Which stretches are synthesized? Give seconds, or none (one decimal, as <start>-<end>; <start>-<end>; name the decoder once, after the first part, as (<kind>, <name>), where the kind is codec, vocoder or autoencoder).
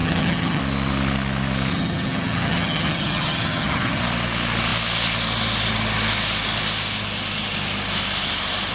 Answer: 0.0-0.6 (vocoder, HiFi-GAN); 1.7-4.0